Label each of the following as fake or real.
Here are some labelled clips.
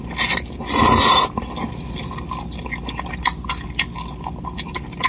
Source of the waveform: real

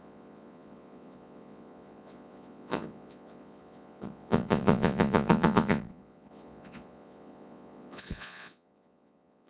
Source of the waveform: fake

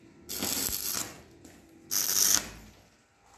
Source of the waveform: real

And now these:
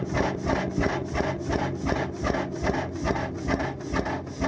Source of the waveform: real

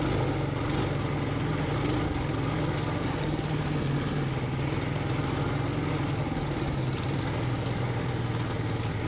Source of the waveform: real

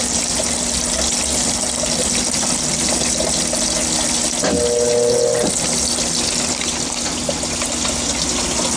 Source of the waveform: real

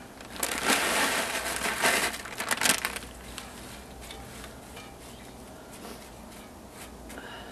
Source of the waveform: real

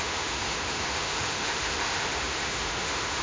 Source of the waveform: fake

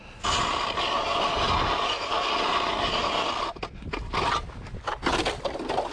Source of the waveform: real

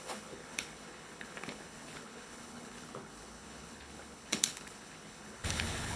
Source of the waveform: fake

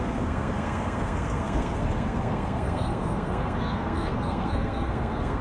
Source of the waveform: fake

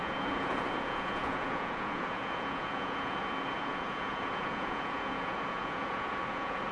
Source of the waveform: fake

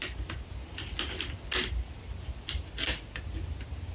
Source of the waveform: real